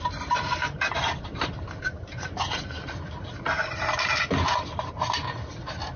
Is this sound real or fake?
fake